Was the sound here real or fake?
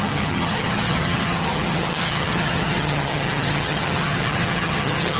fake